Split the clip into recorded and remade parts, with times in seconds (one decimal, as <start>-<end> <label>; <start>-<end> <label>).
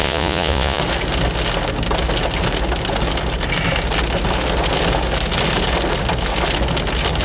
0.0-0.8 remade; 0.8-7.2 recorded